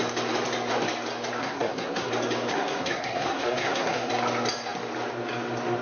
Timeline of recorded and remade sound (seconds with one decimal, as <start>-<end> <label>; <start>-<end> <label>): 0.0-1.4 recorded; 1.4-2.1 remade; 2.1-2.5 recorded; 2.5-4.1 remade; 4.1-5.8 recorded